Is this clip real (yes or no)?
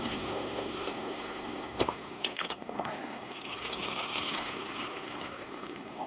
no